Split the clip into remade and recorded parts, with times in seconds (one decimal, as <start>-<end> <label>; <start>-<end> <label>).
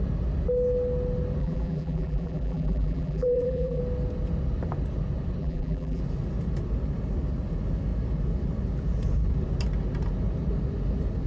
0.0-1.4 recorded; 1.4-3.8 remade; 3.8-5.4 recorded; 5.4-6.0 remade; 6.0-11.3 recorded